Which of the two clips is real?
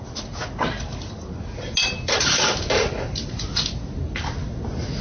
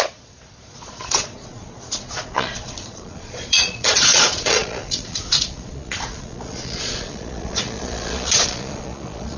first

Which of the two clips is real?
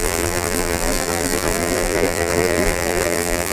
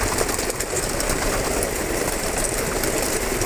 second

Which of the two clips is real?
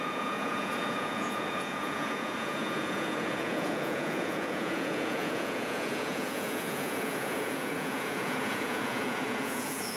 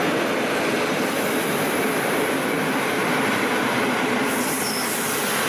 second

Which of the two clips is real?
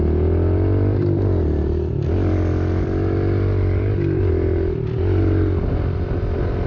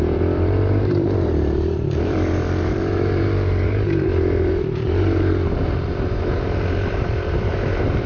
first